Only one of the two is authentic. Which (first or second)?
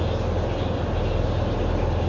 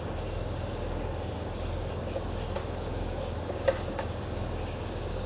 first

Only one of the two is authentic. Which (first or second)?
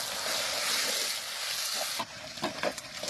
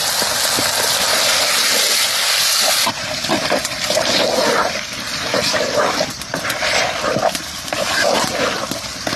first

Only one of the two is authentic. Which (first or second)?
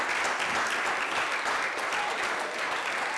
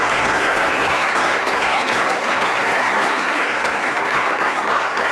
first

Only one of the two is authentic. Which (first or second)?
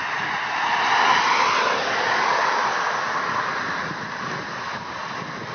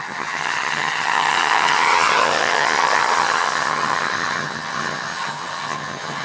first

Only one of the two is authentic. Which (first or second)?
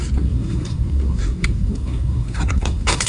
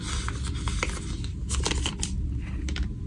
second